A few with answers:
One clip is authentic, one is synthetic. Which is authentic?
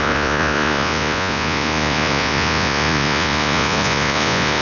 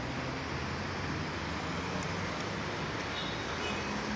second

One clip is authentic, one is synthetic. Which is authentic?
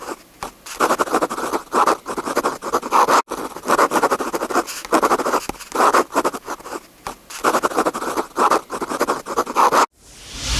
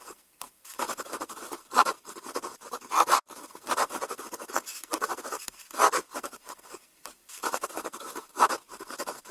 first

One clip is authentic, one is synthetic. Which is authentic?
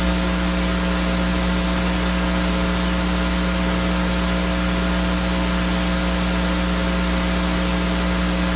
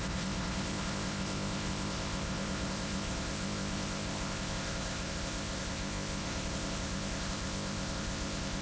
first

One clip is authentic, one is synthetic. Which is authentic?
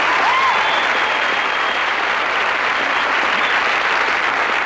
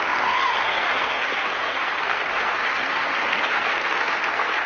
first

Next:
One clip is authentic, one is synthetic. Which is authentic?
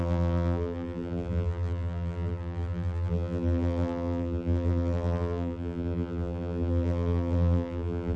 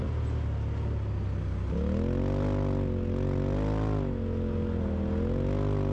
second